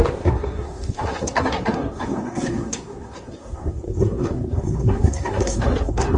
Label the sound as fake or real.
fake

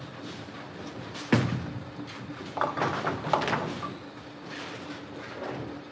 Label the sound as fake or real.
real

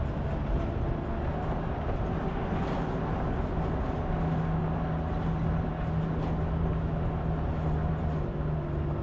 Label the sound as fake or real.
real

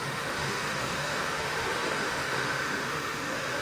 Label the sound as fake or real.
fake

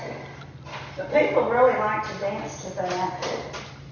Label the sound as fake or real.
real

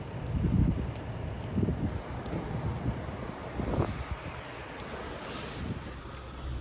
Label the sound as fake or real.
real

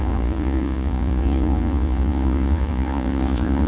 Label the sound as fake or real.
fake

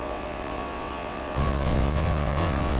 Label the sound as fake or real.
fake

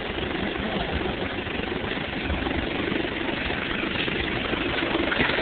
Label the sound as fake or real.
real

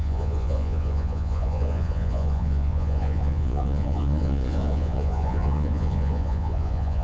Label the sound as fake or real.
fake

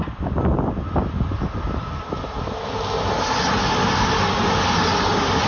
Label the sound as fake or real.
real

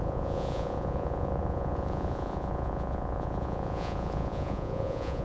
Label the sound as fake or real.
fake